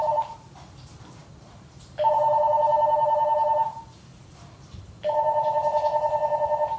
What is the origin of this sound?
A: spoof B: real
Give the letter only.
A